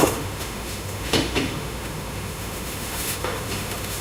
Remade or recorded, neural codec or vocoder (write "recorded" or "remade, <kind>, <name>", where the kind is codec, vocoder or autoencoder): remade, autoencoder, DAC-VAE